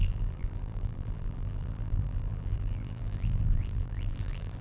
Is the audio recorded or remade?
remade